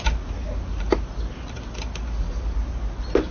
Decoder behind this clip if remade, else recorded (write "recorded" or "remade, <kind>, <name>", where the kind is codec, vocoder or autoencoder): recorded